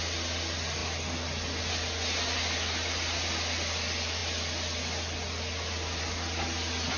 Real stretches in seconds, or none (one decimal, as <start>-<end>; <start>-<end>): 0.0-7.0